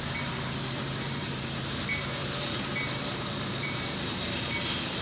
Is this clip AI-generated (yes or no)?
yes